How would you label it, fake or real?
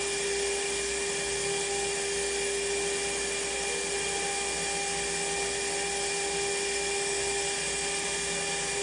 real